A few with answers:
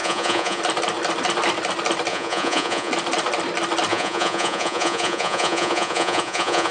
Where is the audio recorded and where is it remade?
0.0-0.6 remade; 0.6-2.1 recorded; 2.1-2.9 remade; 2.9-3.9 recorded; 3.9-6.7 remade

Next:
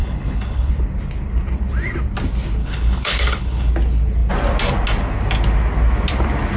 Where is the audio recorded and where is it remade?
0.0-0.7 remade; 0.7-2.6 recorded; 2.6-3.7 remade; 3.7-6.6 recorded